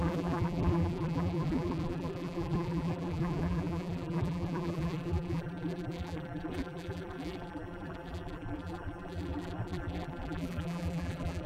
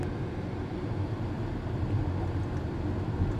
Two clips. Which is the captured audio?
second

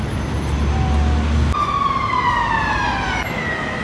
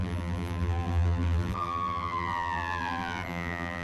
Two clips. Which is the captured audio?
first